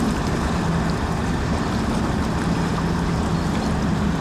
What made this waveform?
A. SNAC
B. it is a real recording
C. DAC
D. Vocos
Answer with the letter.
B